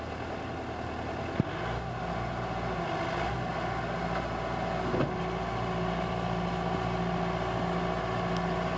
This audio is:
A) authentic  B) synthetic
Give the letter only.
A